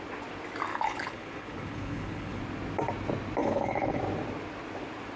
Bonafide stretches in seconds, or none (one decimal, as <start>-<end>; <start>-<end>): 0.0-0.7; 2.4-3.4; 4.0-5.2